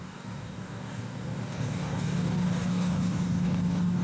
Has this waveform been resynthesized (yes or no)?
yes